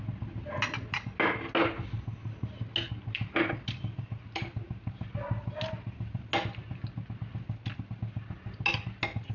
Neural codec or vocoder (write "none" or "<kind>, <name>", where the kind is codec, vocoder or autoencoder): none